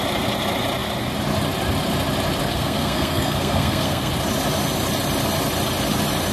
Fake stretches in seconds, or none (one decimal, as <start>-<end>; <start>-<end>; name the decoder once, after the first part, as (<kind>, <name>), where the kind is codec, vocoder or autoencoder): 2.5-4.1 (codec, SNAC)